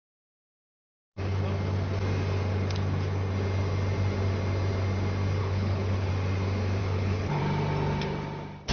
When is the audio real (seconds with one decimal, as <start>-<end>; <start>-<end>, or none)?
0.0-5.4; 6.1-6.8; 7.4-8.7